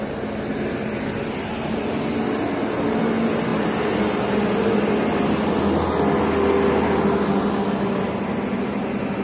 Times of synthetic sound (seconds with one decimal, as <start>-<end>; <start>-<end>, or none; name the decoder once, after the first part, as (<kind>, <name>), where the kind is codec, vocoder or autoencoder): none